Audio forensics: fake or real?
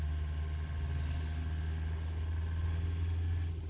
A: real